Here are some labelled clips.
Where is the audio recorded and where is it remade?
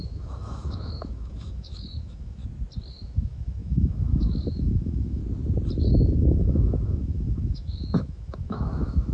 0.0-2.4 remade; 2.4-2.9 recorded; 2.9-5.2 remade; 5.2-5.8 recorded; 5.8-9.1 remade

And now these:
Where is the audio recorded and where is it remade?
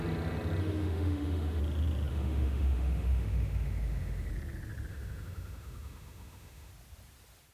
0.0-0.6 recorded; 0.6-1.6 remade; 1.6-2.1 recorded; 2.1-4.3 remade; 4.3-4.9 recorded; 4.9-6.7 remade; 6.7-7.5 recorded